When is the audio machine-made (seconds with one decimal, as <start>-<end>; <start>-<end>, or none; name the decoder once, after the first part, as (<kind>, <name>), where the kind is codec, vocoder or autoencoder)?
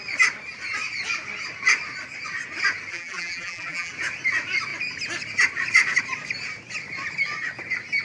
2.9-3.9 (vocoder, BigVGAN v2)